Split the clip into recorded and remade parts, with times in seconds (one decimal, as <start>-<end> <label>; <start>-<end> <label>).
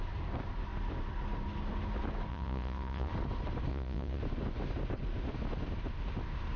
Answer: 0.0-2.3 recorded; 2.3-3.1 remade; 3.1-3.7 recorded; 3.7-4.2 remade; 4.2-6.6 recorded